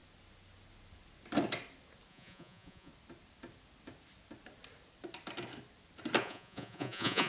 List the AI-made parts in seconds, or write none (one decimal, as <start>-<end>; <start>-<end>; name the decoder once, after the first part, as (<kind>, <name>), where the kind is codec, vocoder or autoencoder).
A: 2.1-2.9 (vocoder, Vocos); 6.2-7.3